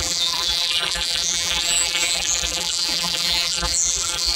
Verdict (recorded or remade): remade